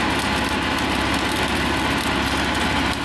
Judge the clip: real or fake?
real